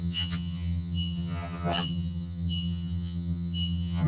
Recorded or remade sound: remade